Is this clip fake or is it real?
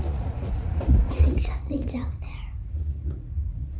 fake